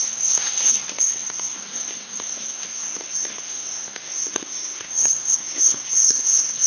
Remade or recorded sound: remade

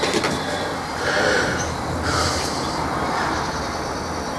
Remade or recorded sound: recorded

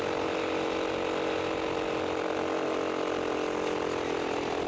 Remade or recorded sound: recorded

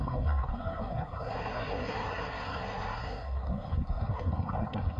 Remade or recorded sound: remade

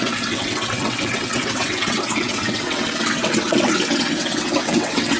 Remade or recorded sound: remade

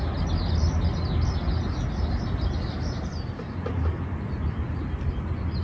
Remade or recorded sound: recorded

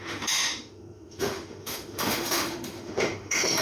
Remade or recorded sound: remade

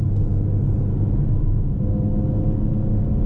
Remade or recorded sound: recorded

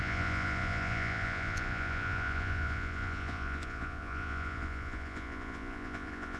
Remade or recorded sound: remade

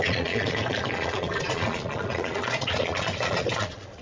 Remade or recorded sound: remade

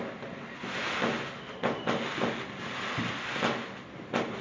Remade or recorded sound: recorded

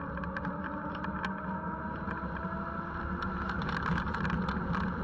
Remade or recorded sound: recorded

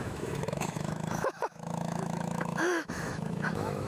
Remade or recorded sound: remade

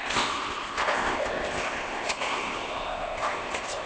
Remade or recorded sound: remade